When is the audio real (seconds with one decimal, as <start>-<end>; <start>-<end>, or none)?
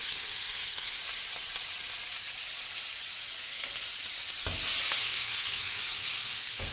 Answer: 1.0-5.0